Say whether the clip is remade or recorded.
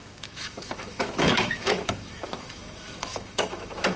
remade